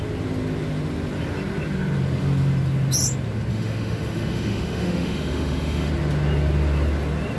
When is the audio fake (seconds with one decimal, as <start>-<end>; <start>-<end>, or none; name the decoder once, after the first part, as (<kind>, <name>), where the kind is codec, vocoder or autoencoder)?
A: 3.5-5.9 (autoencoder, DAC-VAE)